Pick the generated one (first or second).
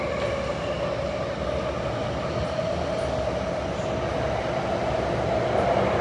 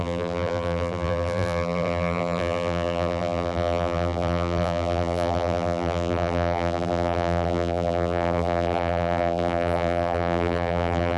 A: second